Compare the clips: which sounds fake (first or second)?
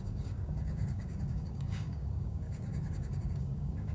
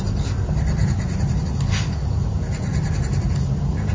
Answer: first